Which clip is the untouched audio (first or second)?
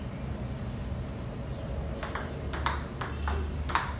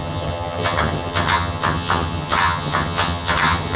first